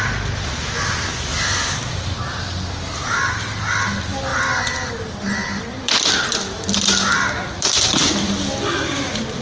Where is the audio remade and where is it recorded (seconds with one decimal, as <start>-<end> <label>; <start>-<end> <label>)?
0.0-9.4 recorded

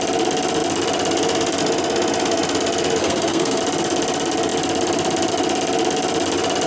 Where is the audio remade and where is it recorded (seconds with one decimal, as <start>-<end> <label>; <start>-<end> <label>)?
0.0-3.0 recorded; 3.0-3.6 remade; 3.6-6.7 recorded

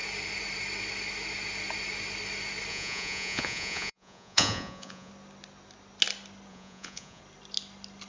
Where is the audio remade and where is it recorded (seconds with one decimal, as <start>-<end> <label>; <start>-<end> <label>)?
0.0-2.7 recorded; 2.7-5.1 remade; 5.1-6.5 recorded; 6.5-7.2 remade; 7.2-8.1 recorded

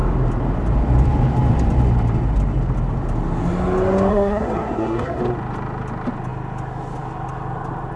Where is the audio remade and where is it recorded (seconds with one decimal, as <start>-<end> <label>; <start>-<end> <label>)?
0.0-4.1 recorded; 4.1-5.2 remade; 5.2-8.0 recorded

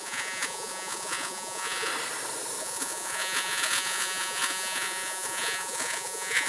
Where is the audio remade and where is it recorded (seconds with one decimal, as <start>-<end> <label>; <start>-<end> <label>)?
0.0-1.9 remade; 1.9-2.6 recorded; 2.6-6.5 remade